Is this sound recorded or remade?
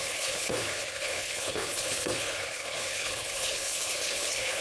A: remade